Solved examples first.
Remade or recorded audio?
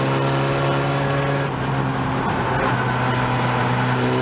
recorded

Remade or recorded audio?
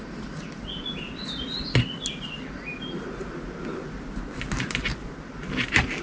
recorded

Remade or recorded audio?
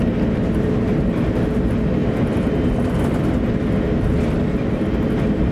recorded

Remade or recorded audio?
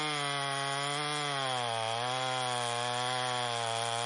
recorded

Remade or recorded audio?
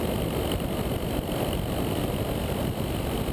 recorded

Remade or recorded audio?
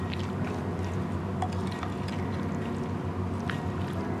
recorded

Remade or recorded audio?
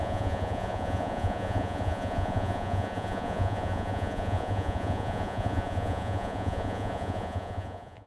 remade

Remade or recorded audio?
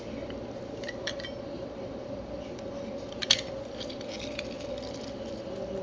remade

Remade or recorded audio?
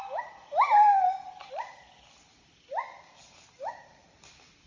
recorded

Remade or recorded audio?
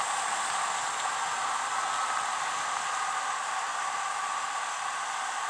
recorded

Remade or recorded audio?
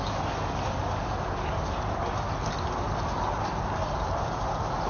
recorded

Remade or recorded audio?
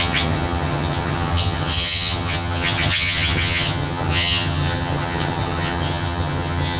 remade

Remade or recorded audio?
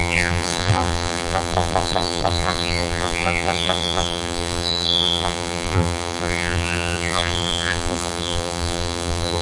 remade